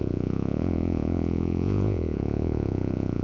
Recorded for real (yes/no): no